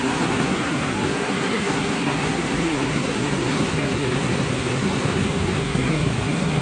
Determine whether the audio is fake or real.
fake